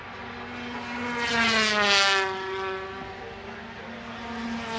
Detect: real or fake real